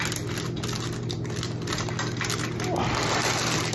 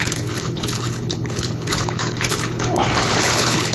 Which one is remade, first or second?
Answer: second